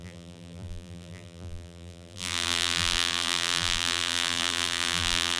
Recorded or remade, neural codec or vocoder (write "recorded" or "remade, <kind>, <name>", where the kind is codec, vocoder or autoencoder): remade, vocoder, BigVGAN v2